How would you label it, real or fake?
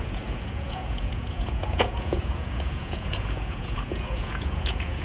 fake